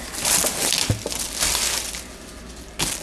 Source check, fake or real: real